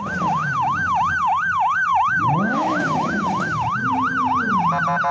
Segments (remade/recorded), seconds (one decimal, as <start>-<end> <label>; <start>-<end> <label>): 0.0-0.4 recorded; 0.4-1.1 remade; 1.1-1.9 recorded; 1.9-3.9 remade; 3.9-5.1 recorded